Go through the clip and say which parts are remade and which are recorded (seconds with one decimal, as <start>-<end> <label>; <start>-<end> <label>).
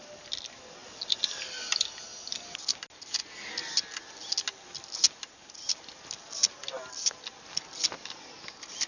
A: 0.0-8.9 recorded